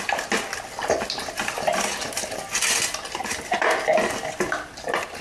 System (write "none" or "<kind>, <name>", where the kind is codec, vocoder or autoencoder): none